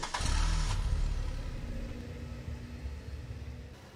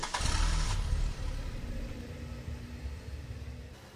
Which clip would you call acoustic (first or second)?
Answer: first